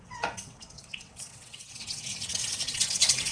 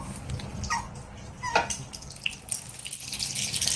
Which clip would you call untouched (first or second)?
second